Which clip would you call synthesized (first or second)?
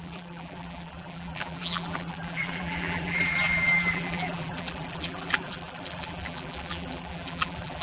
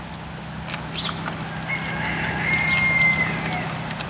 first